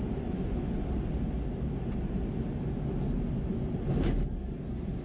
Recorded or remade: recorded